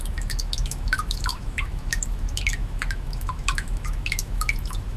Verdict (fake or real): fake